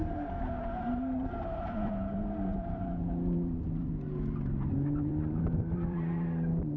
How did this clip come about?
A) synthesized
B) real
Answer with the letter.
A